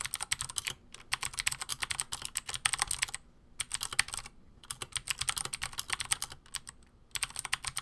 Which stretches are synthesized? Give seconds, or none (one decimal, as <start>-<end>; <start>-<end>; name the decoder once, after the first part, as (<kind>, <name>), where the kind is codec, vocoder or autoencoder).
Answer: none

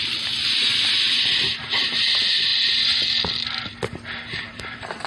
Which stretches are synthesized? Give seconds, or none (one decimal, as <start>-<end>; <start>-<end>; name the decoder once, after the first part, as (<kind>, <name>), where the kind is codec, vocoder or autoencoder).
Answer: 2.5-3.0 (vocoder, BigVGAN v2); 4.4-5.1

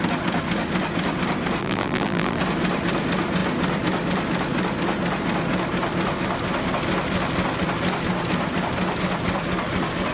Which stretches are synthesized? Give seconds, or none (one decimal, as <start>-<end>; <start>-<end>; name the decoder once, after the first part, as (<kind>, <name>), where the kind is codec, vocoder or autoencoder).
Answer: 1.6-2.4 (vocoder, BigVGAN v2)

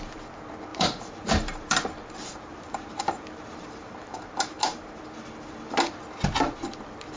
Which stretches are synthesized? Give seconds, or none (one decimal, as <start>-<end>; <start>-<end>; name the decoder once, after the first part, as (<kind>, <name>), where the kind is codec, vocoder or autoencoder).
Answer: 0.7-5.0 (vocoder, BigVGAN v2)

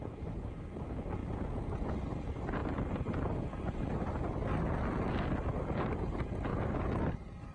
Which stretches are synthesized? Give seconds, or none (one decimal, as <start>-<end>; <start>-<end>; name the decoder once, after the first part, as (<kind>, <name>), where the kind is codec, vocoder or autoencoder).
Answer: 1.2-1.9 (vocoder, BigVGAN v2)

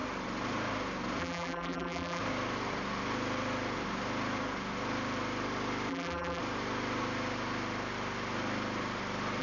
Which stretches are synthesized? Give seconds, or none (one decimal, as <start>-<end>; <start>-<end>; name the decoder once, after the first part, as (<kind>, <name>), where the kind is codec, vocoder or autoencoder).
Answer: 1.2-2.2 (vocoder, BigVGAN v2); 5.9-6.4